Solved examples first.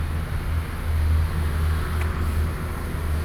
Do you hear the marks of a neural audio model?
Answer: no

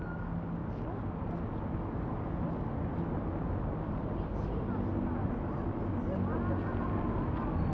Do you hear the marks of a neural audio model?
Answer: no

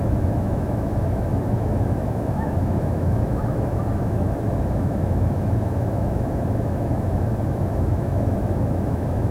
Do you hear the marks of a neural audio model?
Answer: yes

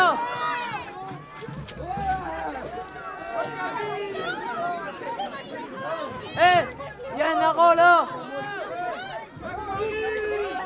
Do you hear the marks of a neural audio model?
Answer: no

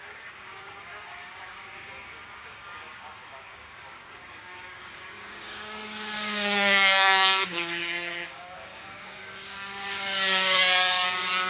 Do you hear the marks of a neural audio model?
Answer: yes